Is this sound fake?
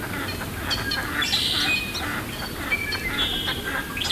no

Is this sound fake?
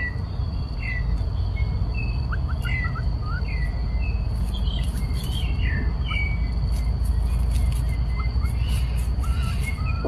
no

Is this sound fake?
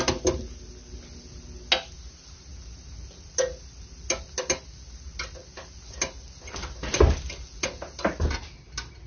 no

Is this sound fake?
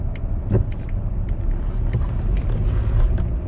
no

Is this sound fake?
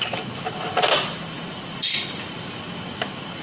no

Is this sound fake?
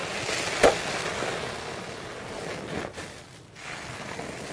no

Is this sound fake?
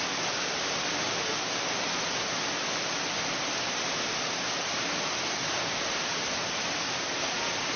no